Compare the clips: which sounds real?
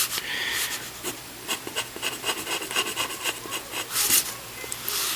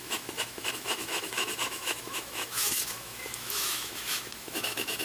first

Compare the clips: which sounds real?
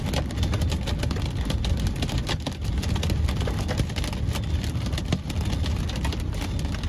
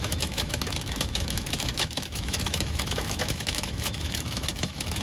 first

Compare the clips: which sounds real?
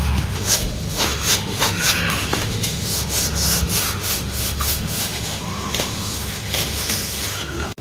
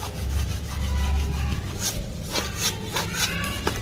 second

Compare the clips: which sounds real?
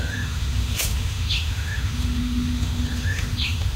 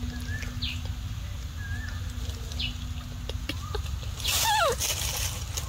second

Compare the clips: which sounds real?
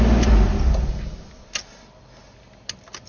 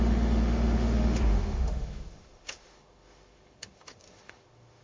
first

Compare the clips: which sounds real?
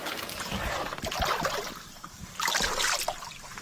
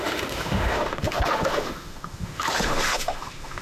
first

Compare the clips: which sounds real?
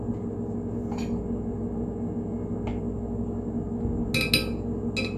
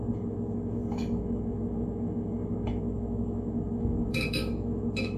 first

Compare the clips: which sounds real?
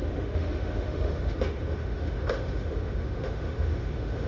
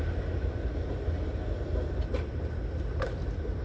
second